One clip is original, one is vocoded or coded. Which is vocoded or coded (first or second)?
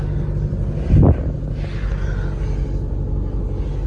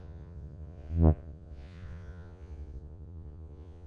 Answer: second